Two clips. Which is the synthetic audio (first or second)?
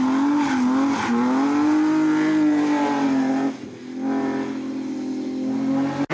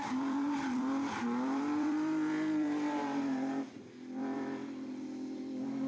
second